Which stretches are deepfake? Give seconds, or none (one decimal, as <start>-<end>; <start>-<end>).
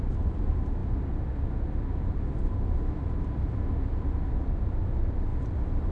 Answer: 5.3-5.9